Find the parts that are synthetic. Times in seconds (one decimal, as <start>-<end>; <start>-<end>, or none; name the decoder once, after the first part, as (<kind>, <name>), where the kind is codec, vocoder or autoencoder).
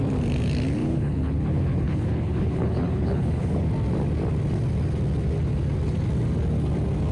0.8-3.7 (codec, HILCodec)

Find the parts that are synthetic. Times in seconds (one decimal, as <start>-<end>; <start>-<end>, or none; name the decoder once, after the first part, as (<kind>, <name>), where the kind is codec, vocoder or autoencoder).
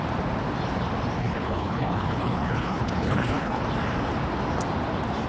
1.2-3.6 (codec, HILCodec)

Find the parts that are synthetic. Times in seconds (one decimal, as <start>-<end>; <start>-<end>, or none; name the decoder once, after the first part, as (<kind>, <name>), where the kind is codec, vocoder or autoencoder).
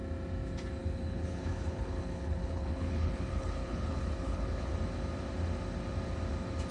0.8-4.7 (codec, HILCodec)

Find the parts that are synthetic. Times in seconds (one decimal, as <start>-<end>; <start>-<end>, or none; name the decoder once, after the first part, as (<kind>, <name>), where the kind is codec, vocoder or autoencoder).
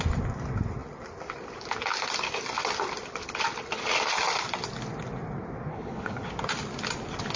5.7-6.3 (codec, HILCodec)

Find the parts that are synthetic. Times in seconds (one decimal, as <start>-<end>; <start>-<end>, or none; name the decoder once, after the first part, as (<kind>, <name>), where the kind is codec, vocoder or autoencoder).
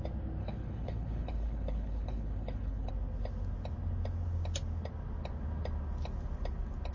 0.4-2.9 (codec, HILCodec)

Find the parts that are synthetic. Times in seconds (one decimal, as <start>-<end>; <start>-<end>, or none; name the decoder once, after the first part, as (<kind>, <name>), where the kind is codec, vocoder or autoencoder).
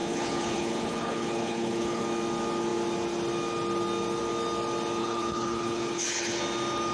0.0-2.0 (codec, HILCodec); 5.0-6.4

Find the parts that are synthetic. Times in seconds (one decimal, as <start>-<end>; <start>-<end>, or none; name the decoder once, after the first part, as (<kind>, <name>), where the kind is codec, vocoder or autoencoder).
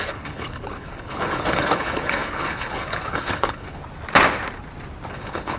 0.0-3.8 (codec, HILCodec); 5.1-5.6